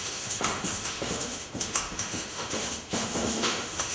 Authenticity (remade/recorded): remade